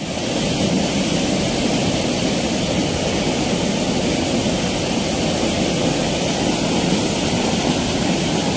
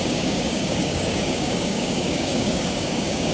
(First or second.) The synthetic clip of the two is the second